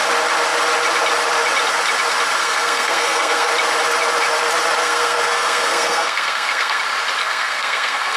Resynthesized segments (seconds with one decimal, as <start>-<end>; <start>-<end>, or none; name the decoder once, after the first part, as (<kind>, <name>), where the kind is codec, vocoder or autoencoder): 2.4-3.5 (codec, SNAC); 4.8-6.8; 7.2-8.2